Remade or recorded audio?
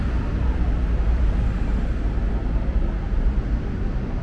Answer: recorded